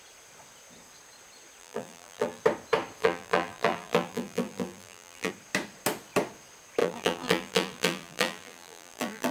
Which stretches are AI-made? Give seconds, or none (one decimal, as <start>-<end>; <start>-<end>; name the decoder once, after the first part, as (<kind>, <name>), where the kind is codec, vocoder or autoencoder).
1.6-2.4 (vocoder, BigVGAN v2); 3.0-5.3; 6.8-9.3